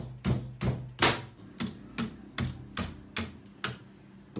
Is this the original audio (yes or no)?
yes